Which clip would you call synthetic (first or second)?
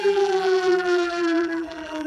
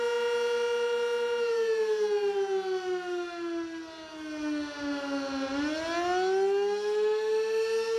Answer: first